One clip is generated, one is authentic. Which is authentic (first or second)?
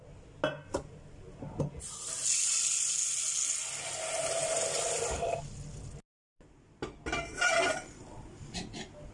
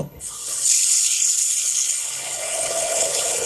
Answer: first